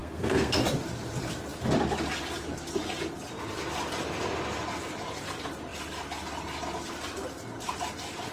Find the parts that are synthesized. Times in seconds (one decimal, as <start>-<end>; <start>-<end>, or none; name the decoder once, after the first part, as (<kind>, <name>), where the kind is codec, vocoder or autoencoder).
0.0-0.6 (codec, SNAC)